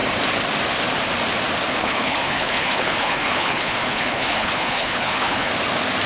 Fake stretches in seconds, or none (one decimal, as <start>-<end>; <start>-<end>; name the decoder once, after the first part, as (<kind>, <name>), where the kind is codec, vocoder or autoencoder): 1.8-5.5 (codec, HILCodec)